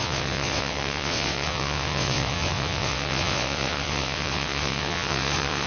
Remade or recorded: remade